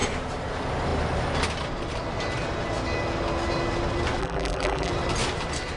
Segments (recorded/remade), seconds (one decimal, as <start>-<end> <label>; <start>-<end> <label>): 0.0-4.2 recorded; 4.2-4.9 remade; 4.9-5.8 recorded